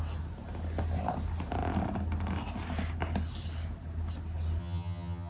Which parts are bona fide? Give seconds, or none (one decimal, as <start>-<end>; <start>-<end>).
0.0-4.6